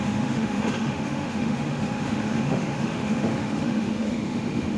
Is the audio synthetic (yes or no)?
yes